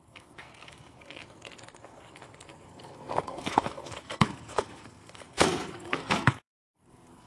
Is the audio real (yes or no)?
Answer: no